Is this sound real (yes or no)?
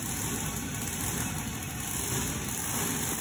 yes